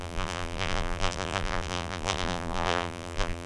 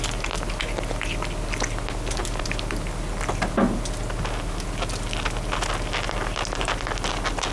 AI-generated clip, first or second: first